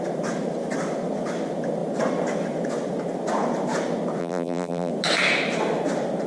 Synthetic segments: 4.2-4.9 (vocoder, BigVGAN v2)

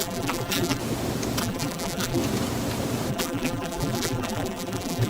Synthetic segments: 0.0-0.8 (vocoder, BigVGAN v2); 1.4-2.2; 3.1-5.1

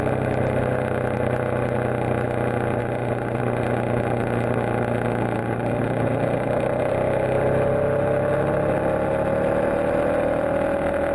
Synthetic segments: 2.8-3.4 (vocoder, BigVGAN v2); 5.4-6.9